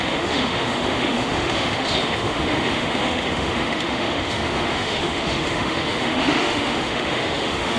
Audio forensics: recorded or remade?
remade